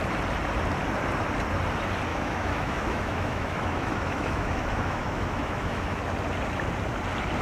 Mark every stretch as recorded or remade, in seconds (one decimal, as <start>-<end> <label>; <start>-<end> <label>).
0.0-2.1 recorded; 2.1-6.0 remade; 6.0-7.4 recorded

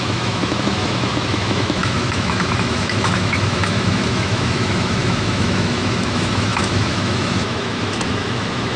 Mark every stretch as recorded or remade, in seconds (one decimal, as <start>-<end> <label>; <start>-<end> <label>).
0.0-8.8 remade